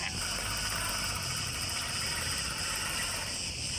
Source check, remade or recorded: recorded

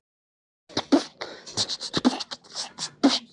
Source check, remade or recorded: recorded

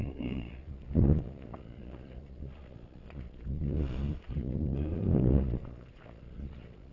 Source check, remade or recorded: remade